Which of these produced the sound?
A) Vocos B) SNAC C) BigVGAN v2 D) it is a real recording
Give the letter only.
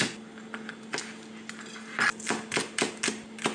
D